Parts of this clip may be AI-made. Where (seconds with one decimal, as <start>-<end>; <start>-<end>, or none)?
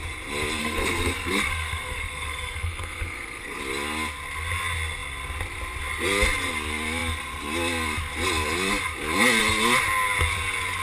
0.6-3.6